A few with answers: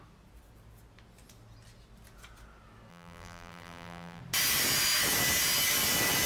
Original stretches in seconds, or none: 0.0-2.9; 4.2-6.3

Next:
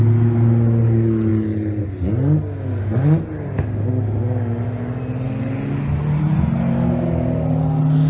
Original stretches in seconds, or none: 0.0-8.1

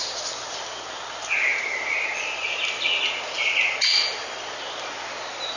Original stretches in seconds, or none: 0.0-5.6